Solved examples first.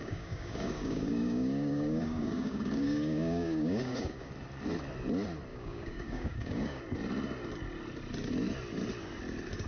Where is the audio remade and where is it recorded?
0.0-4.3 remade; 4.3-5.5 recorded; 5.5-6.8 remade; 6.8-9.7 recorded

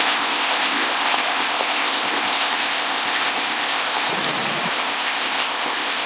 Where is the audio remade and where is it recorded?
0.0-4.1 remade; 4.1-4.7 recorded; 4.7-6.1 remade

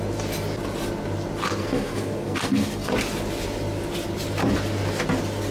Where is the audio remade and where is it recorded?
0.0-1.5 recorded; 1.5-2.9 remade; 2.9-5.5 recorded

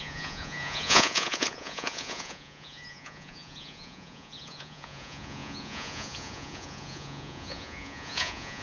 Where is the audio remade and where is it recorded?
0.0-8.6 remade

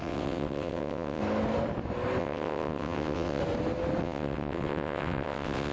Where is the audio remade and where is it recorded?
0.0-1.2 remade; 1.2-2.2 recorded; 2.2-3.4 remade; 3.4-4.0 recorded; 4.0-5.7 remade

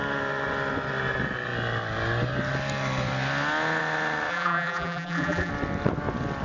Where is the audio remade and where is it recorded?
0.0-4.3 recorded; 4.3-5.5 remade; 5.5-6.4 recorded

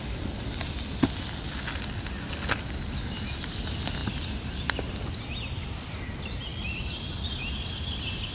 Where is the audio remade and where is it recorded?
0.0-8.3 recorded